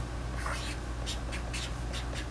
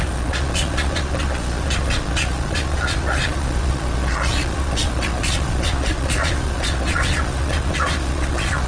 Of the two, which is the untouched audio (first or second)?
first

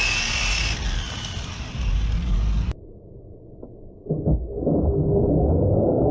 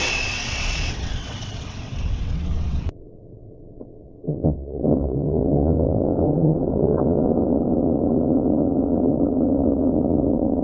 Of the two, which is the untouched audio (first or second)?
first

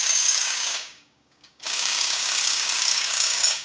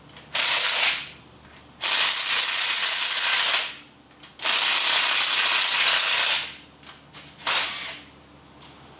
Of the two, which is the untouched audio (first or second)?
second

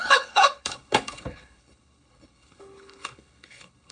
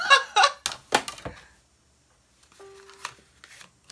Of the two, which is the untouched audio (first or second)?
second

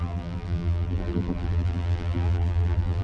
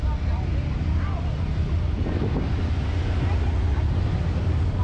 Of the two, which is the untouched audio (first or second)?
second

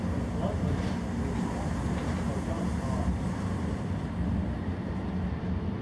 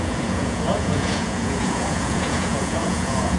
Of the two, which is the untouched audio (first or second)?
first